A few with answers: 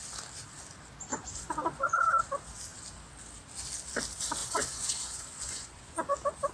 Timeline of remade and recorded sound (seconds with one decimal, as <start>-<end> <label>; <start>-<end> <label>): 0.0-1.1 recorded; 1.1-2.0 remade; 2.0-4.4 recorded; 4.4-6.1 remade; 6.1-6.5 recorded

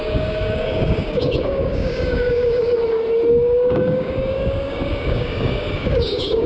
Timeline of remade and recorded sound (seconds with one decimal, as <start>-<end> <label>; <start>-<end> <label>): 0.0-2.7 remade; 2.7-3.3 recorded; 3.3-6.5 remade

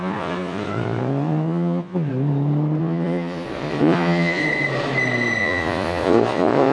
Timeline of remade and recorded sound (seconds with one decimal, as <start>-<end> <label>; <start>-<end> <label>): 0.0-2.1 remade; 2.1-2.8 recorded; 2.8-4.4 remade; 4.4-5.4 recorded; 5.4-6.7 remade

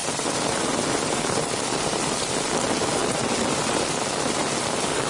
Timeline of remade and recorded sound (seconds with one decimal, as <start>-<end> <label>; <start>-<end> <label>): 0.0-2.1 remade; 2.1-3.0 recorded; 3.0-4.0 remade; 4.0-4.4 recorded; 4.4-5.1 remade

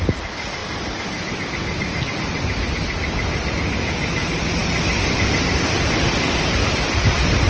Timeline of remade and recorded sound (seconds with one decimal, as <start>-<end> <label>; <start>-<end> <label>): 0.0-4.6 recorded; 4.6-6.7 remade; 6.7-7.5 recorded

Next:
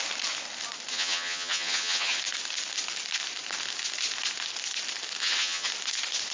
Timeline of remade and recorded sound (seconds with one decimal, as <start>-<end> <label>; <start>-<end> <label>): 0.0-0.9 recorded; 0.9-2.2 remade; 2.2-5.2 recorded; 5.2-5.7 remade; 5.7-6.3 recorded

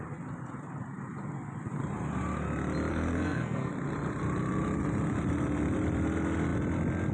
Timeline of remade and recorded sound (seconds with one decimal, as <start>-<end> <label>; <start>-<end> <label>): 0.0-2.9 recorded; 2.9-3.7 remade; 3.7-7.1 recorded

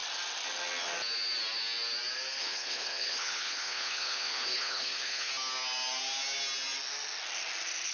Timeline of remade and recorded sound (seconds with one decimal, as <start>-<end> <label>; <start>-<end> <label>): 0.0-2.4 recorded; 2.4-5.3 remade; 5.3-7.9 recorded